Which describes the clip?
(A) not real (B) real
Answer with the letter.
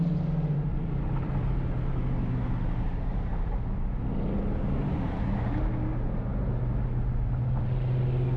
B